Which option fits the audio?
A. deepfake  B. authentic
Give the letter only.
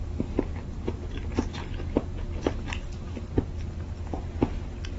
B